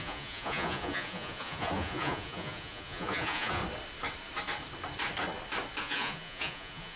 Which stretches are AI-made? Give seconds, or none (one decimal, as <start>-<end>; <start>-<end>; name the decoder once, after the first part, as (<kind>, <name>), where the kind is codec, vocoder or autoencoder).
0.0-3.6 (vocoder, Vocos); 5.8-7.0